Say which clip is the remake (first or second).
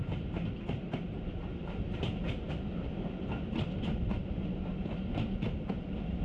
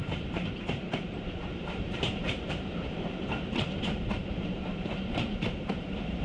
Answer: second